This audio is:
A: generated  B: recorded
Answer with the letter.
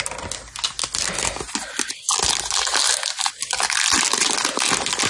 B